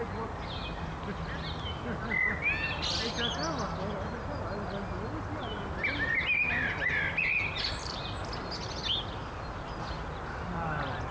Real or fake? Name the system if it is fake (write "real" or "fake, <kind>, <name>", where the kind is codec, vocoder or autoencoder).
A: real